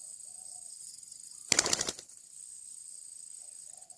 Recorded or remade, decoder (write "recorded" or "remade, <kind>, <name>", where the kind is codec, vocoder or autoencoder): remade, vocoder, BigVGAN v2